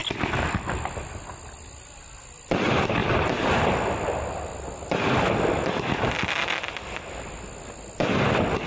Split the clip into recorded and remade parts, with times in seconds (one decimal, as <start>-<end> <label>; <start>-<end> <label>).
0.0-8.7 recorded

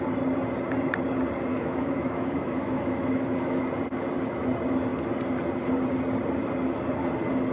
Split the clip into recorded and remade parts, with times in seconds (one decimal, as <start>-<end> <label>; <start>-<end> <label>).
0.0-1.5 recorded; 1.5-3.6 remade; 3.6-7.5 recorded

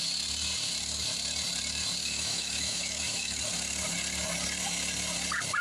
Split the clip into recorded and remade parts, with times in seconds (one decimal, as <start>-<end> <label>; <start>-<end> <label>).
0.0-2.0 recorded; 2.0-3.4 remade; 3.4-5.6 recorded

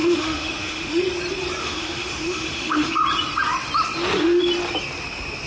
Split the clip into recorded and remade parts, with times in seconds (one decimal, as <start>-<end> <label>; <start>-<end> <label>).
0.0-1.0 remade; 1.0-1.6 recorded; 1.6-2.9 remade; 2.9-5.5 recorded